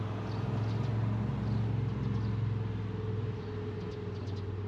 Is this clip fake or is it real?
real